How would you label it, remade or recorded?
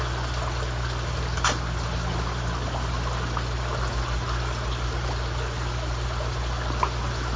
recorded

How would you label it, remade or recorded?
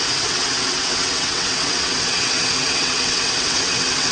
remade